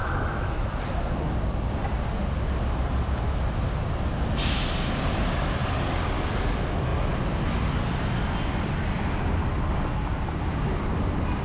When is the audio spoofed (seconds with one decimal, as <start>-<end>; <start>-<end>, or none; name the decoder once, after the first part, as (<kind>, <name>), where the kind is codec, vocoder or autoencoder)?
0.0-0.6 (autoencoder, DAC-VAE)